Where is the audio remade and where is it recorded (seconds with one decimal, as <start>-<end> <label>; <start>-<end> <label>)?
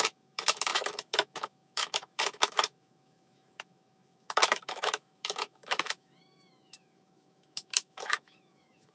0.0-8.9 remade